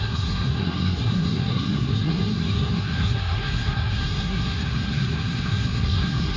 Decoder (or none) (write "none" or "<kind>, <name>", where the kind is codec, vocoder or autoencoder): codec, SNAC